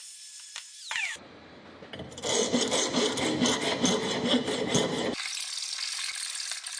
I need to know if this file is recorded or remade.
recorded